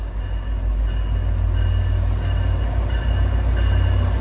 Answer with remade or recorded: recorded